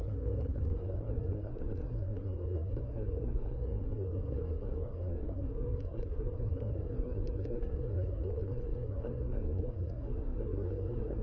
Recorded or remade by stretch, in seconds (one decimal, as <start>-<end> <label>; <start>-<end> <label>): 0.0-11.2 remade